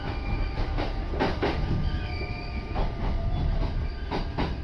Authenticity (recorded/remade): recorded